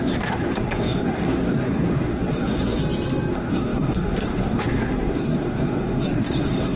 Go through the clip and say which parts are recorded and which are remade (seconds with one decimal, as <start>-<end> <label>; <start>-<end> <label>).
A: 0.0-2.8 remade; 2.8-3.3 recorded; 3.3-6.8 remade